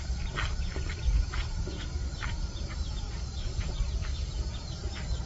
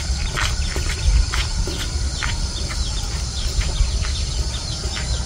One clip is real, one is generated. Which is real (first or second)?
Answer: second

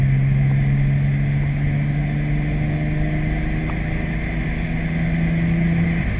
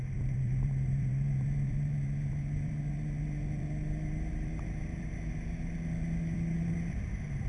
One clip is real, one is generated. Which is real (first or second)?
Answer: first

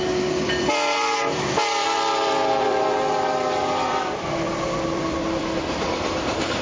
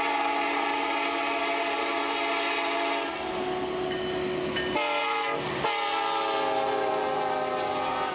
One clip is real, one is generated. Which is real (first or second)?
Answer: second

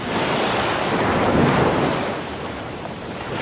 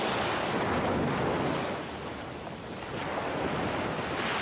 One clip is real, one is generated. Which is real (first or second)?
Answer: second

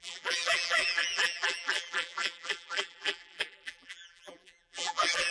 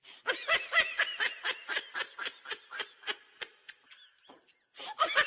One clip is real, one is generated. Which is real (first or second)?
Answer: second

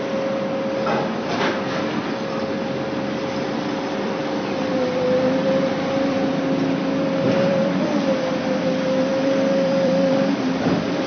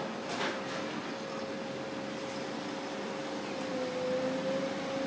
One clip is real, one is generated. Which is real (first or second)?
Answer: second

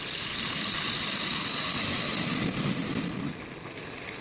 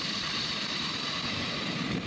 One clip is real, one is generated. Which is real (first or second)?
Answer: first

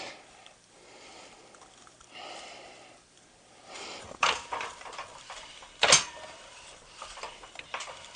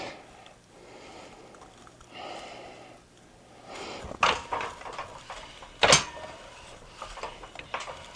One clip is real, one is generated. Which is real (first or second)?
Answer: second